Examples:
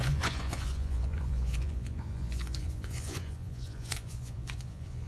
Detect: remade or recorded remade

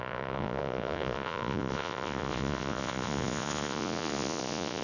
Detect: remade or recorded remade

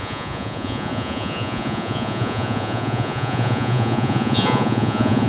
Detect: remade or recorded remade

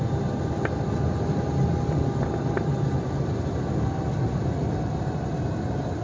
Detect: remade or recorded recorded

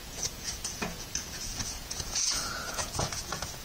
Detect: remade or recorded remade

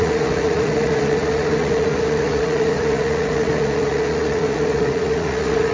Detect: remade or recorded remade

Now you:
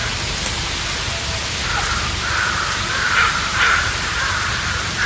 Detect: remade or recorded recorded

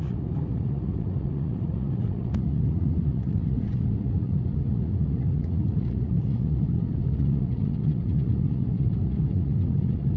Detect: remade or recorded remade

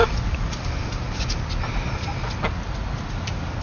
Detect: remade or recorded recorded